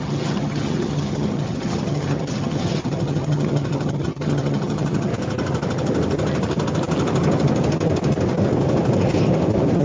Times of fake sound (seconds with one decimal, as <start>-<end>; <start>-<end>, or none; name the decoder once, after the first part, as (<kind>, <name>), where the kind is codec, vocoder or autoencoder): 0.0-5.1 (vocoder, HiFi-GAN)